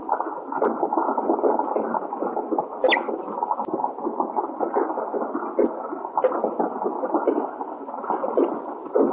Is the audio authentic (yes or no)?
yes